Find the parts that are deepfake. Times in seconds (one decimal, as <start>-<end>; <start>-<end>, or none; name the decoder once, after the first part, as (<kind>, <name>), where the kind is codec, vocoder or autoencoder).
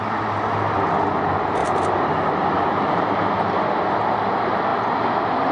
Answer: 1.6-3.3 (vocoder, BigVGAN v2)